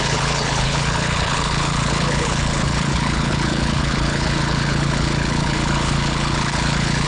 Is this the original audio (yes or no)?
no